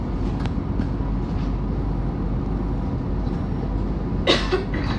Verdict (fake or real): real